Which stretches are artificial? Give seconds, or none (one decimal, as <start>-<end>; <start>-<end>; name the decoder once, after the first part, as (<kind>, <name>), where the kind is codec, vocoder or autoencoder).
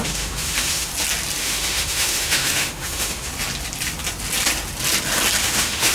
0.0-0.9 (autoencoder, DAC-VAE); 1.4-3.3; 5.4-5.9